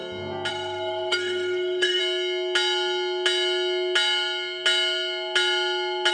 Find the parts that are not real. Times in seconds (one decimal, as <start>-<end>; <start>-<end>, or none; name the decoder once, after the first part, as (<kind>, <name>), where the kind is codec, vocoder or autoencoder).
0.5-2.0 (codec, SNAC)